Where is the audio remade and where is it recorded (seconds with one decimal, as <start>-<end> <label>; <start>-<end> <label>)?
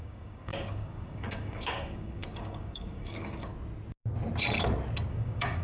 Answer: 0.0-3.5 remade; 3.5-5.1 recorded; 5.1-5.6 remade